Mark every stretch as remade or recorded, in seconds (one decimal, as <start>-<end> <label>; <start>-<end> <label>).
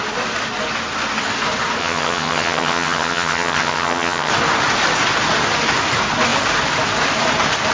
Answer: 0.0-1.8 recorded; 1.8-4.3 remade; 4.3-7.7 recorded